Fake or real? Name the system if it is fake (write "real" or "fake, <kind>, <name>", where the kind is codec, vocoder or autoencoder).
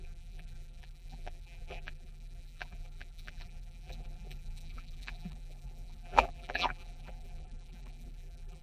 fake, vocoder, BigVGAN v2